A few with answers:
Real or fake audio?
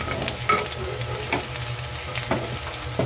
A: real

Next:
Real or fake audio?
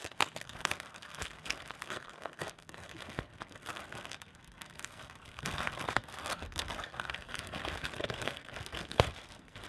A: fake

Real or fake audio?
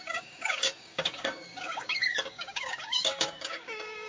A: fake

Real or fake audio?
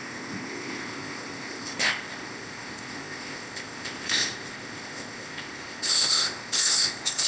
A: fake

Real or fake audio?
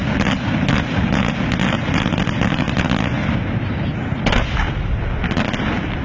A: real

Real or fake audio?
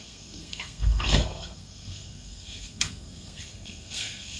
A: fake